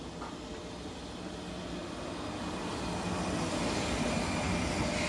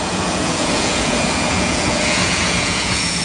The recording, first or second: first